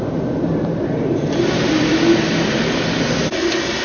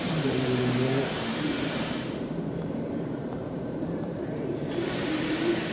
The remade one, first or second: second